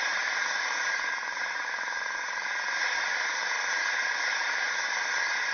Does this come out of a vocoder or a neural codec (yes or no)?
yes